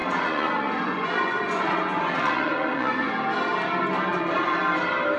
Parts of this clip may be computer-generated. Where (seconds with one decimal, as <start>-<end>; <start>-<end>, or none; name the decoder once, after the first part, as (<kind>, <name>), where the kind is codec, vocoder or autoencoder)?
0.0-3.1 (vocoder, Vocos); 4.1-4.6